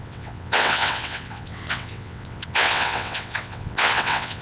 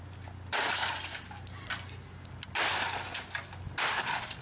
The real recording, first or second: second